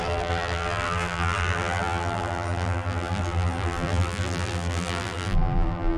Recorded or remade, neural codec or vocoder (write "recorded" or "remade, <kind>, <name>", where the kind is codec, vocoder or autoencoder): remade, vocoder, BigVGAN v2